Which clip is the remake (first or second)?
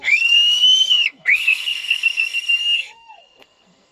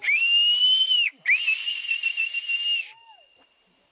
first